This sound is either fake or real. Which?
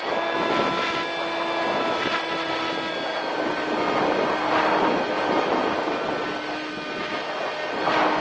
real